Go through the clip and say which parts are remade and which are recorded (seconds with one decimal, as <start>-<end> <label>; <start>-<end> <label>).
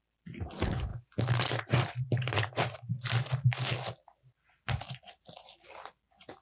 0.0-6.4 recorded